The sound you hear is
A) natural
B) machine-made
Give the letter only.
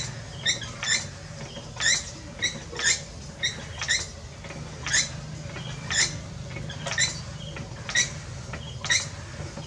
A